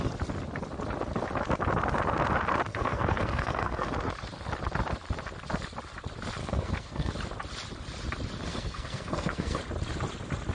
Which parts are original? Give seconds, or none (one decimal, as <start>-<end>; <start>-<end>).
0.0-2.7; 3.9-6.4; 7.1-8.5; 9.6-10.5